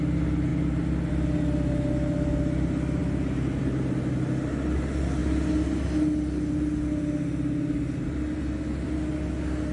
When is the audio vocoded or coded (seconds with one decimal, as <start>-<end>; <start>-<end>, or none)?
none